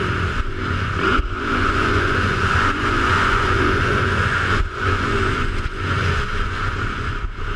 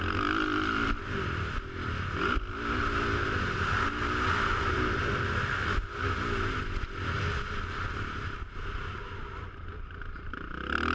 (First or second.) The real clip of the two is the second